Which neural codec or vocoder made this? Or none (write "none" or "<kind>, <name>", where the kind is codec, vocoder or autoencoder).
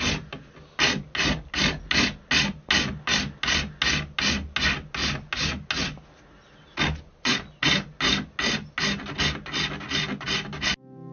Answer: none